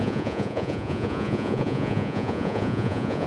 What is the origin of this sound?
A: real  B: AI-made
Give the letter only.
B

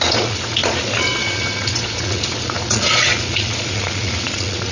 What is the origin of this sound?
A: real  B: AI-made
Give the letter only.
B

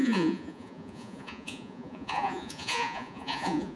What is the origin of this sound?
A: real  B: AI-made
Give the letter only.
B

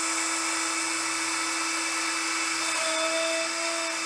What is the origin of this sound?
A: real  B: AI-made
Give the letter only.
A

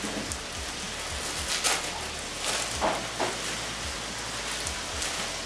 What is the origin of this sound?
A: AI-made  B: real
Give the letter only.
B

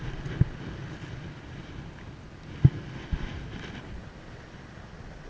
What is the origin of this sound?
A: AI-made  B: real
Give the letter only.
B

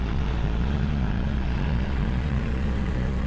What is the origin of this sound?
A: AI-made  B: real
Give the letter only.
A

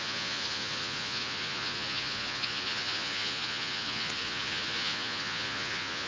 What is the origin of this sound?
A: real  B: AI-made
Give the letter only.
B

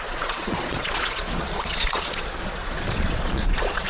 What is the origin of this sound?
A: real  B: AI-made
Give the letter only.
B